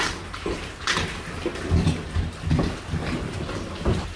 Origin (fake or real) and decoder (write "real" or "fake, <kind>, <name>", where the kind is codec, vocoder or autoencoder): real